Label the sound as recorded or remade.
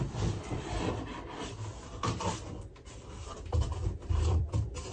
remade